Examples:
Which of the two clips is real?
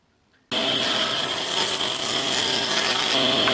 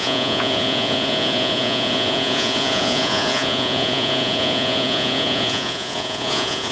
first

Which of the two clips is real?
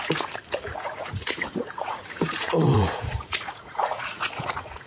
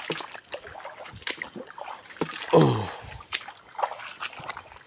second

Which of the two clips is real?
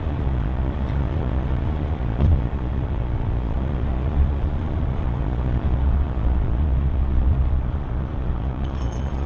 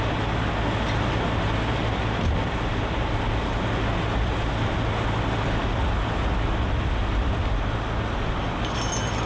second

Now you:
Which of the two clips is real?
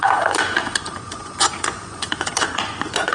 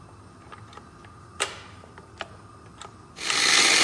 second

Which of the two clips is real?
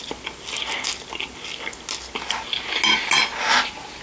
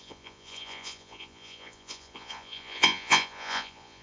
first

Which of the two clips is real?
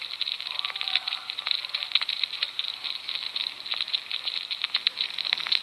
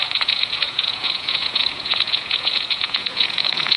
first